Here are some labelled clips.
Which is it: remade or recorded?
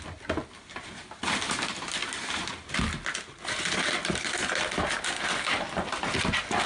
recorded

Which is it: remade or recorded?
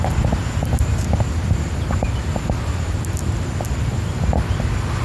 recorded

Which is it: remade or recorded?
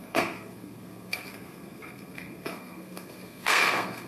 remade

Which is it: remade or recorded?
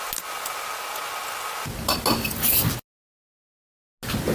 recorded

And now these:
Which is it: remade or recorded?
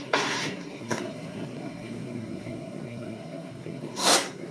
remade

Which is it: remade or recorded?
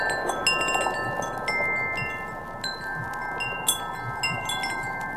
recorded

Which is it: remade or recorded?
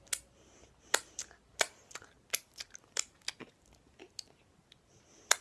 recorded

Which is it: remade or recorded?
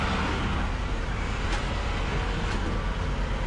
recorded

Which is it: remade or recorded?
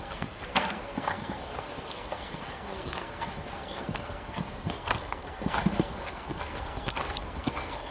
remade